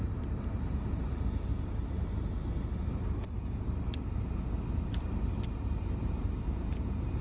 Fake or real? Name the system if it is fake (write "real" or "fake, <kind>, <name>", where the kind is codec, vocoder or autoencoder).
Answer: fake, vocoder, BigVGAN v2